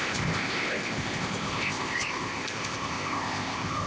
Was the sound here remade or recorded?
remade